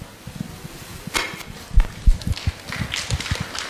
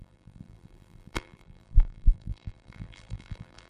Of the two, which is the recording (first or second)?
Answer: first